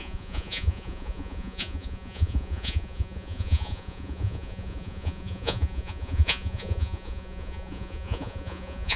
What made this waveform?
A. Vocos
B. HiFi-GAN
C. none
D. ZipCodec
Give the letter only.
A